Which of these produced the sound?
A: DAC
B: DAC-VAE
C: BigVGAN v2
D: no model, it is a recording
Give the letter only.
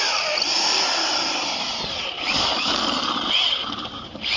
C